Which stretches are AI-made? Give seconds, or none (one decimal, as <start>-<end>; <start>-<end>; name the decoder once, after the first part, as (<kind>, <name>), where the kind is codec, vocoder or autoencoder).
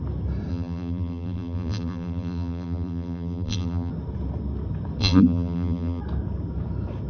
0.5-3.9 (vocoder, BigVGAN v2); 5.0-6.0